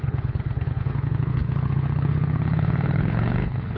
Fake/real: fake